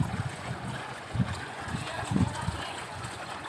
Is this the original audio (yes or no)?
no